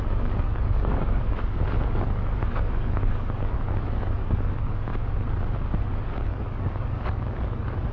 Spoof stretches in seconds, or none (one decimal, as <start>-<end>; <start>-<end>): 0.0-4.9; 5.8-7.9